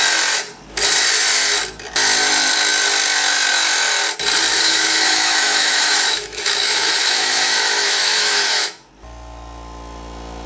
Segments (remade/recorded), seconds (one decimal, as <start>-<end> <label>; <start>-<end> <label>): 0.0-4.5 recorded; 4.5-8.9 remade; 8.9-10.5 recorded